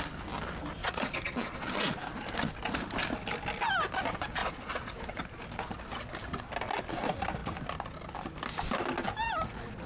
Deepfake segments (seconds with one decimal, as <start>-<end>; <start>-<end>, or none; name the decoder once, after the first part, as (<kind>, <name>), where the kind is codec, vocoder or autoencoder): 0.8-2.0 (vocoder, Vocos); 4.4-5.2